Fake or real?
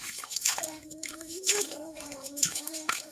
fake